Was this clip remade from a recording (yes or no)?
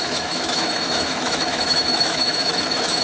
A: yes